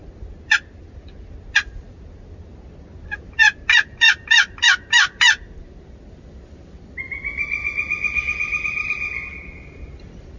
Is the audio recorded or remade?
recorded